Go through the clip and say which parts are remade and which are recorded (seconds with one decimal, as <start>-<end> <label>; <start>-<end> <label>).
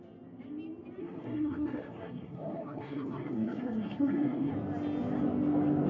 0.0-1.0 recorded; 1.0-4.5 remade; 4.5-5.9 recorded